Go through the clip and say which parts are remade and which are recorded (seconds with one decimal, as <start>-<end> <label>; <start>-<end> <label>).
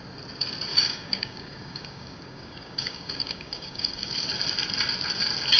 0.0-0.7 recorded; 0.7-4.1 remade; 4.1-5.6 recorded